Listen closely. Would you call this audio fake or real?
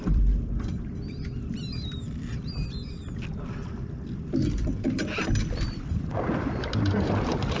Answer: fake